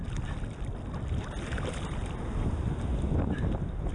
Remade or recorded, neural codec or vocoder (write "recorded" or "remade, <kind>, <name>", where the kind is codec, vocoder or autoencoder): recorded